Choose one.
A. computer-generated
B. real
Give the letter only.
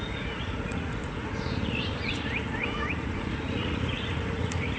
A